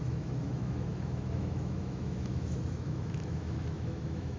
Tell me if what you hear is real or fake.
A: fake